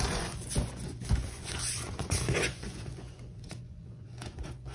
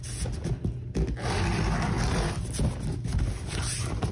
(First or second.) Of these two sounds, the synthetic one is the first